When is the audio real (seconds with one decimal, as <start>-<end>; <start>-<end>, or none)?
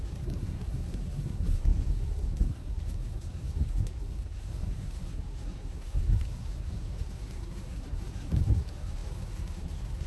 none